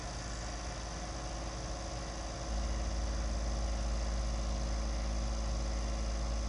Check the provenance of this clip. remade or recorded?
recorded